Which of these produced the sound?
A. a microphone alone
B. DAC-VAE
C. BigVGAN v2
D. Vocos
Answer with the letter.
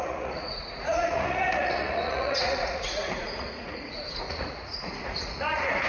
D